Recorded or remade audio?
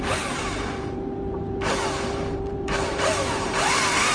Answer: remade